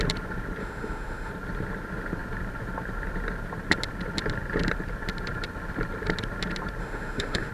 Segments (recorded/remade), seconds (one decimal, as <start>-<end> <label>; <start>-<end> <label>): 0.0-0.6 recorded; 0.6-1.3 remade; 1.3-6.8 recorded; 6.8-7.5 remade